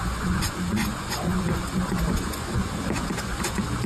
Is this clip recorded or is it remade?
remade